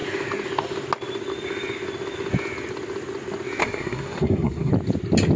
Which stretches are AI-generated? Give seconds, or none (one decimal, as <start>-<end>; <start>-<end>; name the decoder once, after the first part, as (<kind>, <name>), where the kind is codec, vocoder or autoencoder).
3.6-4.7 (codec, SNAC)